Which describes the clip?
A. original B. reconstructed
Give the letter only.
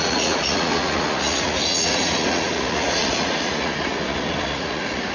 B